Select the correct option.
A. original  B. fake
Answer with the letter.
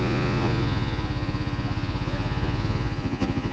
B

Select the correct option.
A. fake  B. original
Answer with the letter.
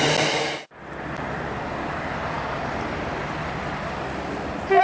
B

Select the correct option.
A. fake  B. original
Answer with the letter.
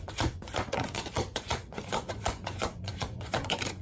A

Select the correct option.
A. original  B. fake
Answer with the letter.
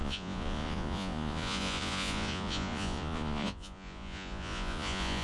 B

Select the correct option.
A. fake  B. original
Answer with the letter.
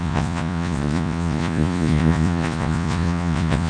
A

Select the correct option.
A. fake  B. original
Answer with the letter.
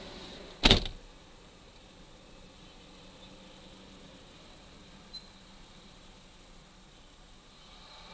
B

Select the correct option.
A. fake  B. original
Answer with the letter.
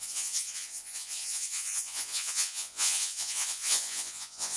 A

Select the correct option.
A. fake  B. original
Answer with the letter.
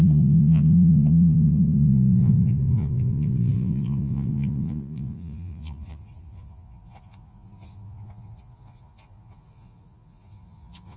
A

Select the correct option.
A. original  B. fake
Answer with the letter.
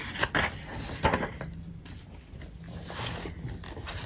A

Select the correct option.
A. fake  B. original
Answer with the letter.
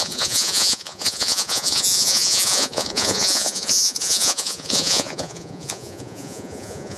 A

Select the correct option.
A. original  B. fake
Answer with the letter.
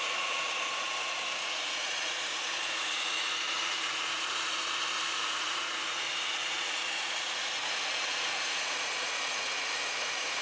B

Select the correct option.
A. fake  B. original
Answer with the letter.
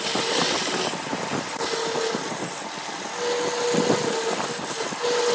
B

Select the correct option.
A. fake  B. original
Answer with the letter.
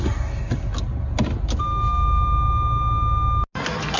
B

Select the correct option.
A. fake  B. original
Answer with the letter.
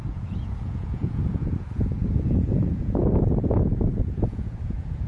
A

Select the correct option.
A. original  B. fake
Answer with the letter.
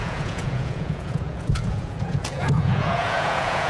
B